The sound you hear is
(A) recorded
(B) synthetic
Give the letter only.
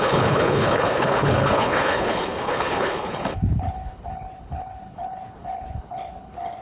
B